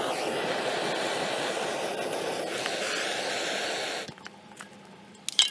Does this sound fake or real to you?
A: real